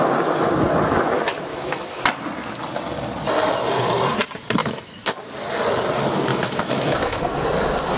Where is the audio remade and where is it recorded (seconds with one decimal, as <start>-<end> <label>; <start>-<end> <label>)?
0.0-1.5 recorded; 1.5-2.0 remade; 2.0-4.6 recorded; 4.6-5.1 remade; 5.1-6.3 recorded; 6.3-7.2 remade; 7.2-8.0 recorded

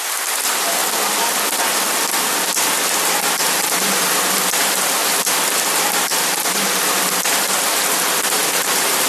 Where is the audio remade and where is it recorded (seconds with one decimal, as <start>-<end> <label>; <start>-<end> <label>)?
0.0-0.8 remade; 0.8-3.5 recorded; 3.5-6.1 remade; 6.1-6.8 recorded; 6.8-9.1 remade

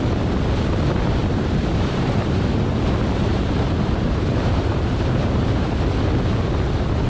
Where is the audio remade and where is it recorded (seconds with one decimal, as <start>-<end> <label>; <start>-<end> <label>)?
0.0-1.2 recorded; 1.2-2.8 remade; 2.8-3.3 recorded; 3.3-5.8 remade; 5.8-7.1 recorded

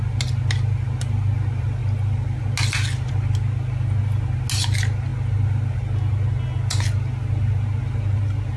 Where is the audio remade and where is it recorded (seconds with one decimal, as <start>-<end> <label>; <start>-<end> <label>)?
0.0-8.6 recorded

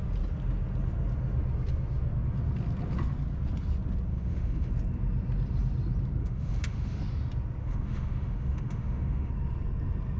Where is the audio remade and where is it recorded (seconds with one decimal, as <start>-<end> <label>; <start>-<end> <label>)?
0.0-4.1 recorded; 4.1-4.7 remade; 4.7-6.2 recorded; 6.2-7.0 remade; 7.0-7.6 recorded; 7.6-9.3 remade; 9.3-10.2 recorded

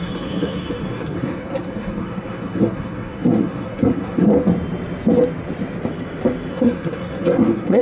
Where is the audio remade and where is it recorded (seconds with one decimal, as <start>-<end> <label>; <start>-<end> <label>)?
0.0-4.3 remade; 4.3-6.5 recorded; 6.5-7.8 remade

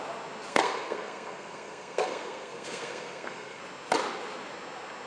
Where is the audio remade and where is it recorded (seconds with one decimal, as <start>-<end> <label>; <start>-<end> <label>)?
0.0-0.5 recorded; 0.5-3.6 remade; 3.6-5.1 recorded